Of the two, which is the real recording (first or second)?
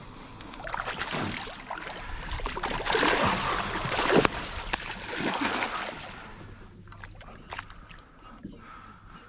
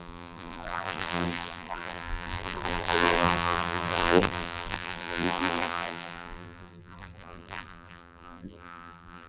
first